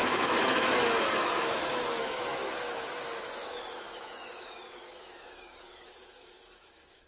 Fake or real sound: fake